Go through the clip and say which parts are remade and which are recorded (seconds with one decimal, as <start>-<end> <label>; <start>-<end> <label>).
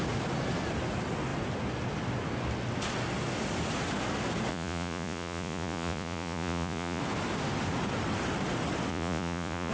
0.0-4.5 recorded; 4.5-7.0 remade; 7.0-8.9 recorded; 8.9-9.7 remade